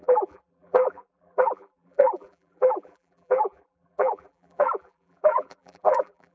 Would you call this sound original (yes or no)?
no